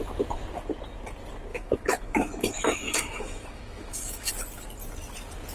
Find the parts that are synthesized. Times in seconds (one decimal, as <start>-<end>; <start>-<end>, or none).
1.5-4.3